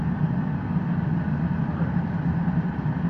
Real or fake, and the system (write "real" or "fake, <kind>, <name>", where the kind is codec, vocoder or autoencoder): real